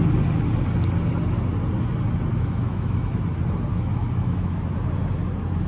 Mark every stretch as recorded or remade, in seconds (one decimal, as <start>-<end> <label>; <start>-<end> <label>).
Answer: 0.0-2.3 recorded; 2.3-3.2 remade; 3.2-3.7 recorded; 3.7-4.6 remade; 4.6-5.7 recorded